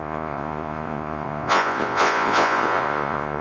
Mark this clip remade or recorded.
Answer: remade